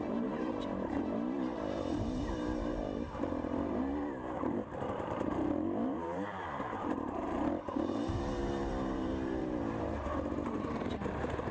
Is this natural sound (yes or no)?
no